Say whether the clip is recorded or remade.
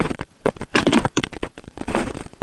remade